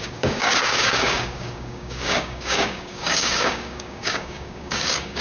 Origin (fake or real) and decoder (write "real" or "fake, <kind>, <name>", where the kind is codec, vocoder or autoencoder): fake, codec, DAC